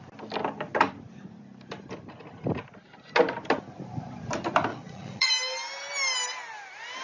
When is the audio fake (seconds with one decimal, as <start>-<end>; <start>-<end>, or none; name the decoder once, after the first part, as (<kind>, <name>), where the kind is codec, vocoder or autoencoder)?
4.7-5.3 (vocoder, Vocos)